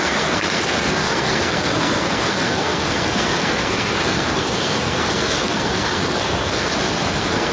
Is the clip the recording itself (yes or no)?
no